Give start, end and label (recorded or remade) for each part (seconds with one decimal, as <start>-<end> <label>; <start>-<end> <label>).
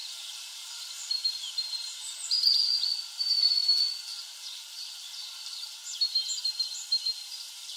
0.0-5.8 remade; 5.8-6.4 recorded; 6.4-7.8 remade